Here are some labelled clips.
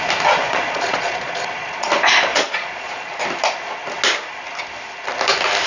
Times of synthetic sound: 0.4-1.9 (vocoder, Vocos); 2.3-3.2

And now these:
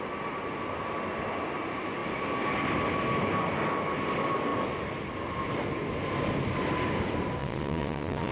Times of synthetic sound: 7.4-8.3 (vocoder, Vocos)